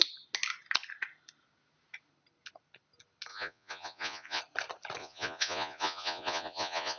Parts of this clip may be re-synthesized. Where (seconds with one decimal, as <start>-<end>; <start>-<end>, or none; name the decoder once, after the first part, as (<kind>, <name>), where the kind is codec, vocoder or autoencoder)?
3.3-4.4 (vocoder, Vocos); 5.0-7.0

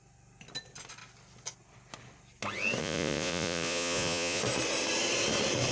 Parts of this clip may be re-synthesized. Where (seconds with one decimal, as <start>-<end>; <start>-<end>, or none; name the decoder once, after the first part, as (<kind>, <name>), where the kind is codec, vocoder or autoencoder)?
2.8-4.4 (vocoder, Vocos)

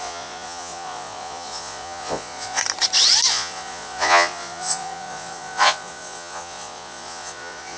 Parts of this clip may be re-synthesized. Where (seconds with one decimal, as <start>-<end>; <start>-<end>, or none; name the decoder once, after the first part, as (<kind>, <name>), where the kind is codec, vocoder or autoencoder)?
0.0-2.6 (vocoder, Vocos); 3.3-7.8

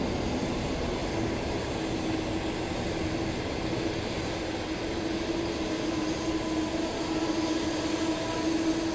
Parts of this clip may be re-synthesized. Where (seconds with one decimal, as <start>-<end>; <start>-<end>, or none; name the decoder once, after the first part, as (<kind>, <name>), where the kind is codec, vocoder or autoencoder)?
none

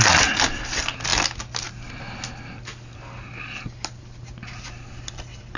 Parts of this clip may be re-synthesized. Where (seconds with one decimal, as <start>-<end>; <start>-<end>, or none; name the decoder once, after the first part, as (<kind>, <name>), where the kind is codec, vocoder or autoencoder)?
none